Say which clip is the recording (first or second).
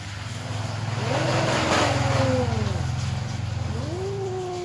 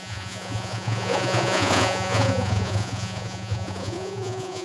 first